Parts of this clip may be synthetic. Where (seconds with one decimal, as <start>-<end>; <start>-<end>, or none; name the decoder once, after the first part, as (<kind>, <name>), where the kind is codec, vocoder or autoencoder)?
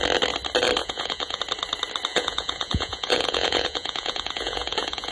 0.8-1.4 (vocoder, Vocos); 2.1-5.1